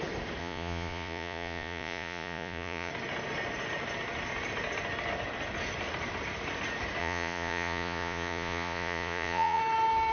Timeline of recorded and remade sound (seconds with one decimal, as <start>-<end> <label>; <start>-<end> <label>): 0.0-0.4 recorded; 0.4-2.9 remade; 2.9-7.0 recorded; 7.0-9.6 remade; 9.6-10.1 recorded